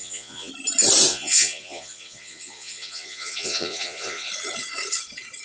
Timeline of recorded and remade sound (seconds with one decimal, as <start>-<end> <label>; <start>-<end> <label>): 0.0-0.5 remade; 0.5-1.1 recorded; 1.1-4.3 remade; 4.3-5.4 recorded